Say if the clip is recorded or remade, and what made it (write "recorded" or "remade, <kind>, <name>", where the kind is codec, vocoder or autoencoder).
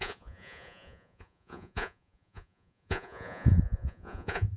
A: remade, vocoder, Vocos